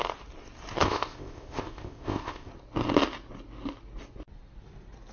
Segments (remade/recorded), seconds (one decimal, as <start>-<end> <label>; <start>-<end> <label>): 0.0-0.8 recorded; 0.8-2.5 remade; 2.5-5.1 recorded